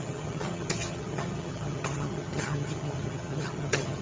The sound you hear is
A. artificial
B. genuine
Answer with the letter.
A